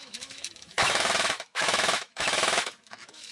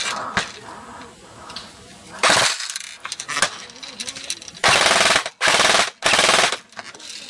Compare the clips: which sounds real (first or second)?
second